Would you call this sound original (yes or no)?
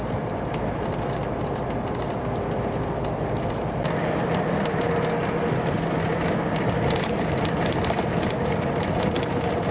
no